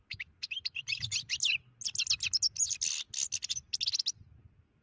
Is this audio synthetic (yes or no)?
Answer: no